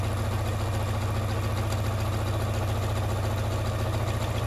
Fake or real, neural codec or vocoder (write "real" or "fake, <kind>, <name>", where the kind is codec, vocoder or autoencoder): real